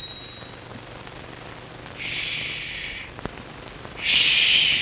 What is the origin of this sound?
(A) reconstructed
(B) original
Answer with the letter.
B